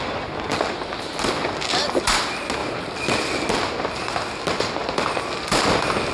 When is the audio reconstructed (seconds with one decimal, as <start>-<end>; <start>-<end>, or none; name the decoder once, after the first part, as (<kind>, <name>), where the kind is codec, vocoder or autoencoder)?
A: none